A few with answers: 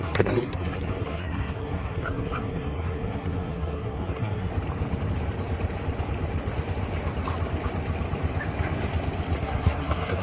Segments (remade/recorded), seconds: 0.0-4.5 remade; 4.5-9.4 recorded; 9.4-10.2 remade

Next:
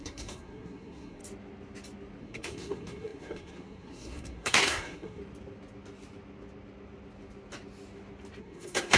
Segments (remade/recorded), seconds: 0.0-1.2 remade; 1.2-2.2 recorded; 2.2-5.2 remade; 5.2-8.4 recorded; 8.4-9.0 remade